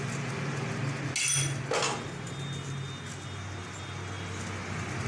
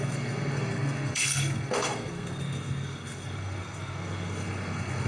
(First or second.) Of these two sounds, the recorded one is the first